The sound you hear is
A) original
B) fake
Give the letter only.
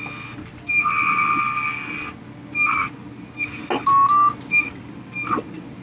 A